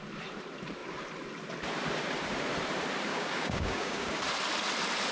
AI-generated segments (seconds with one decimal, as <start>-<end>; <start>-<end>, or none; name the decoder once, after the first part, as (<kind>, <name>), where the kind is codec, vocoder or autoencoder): 3.1-4.1 (codec, DAC)